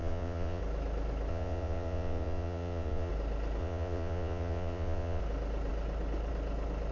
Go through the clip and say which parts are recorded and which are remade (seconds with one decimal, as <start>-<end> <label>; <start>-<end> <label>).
0.0-0.6 remade; 0.6-1.3 recorded; 1.3-3.1 remade; 3.1-3.6 recorded; 3.6-5.2 remade; 5.2-6.9 recorded